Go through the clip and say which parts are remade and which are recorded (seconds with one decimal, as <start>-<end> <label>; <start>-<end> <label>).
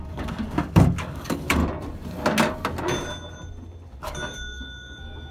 0.0-1.6 remade; 1.6-4.0 recorded; 4.0-5.3 remade